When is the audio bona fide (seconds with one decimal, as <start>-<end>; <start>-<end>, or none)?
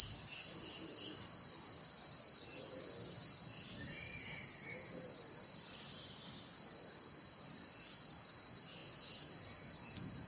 0.0-10.3